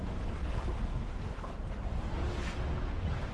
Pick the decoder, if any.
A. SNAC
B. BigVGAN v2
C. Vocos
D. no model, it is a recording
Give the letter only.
D